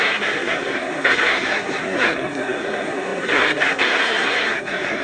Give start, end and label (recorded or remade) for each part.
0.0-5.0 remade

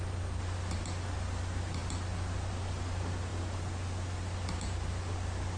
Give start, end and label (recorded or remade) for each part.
0.0-5.6 recorded

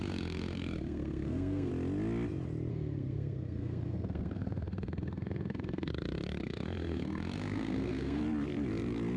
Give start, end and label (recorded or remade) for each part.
0.0-1.7 remade; 1.7-2.7 recorded; 2.7-5.9 remade; 5.9-6.4 recorded; 6.4-8.2 remade; 8.2-9.2 recorded

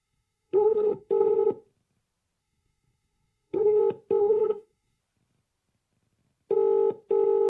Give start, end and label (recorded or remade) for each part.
0.0-1.1 remade; 1.1-2.4 recorded; 2.4-3.8 remade; 3.8-4.2 recorded; 4.2-5.0 remade; 5.0-7.5 recorded

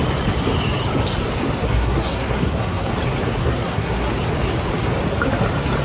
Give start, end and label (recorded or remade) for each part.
0.0-1.6 recorded; 1.6-2.9 remade; 2.9-3.4 recorded; 3.4-4.1 remade; 4.1-5.8 recorded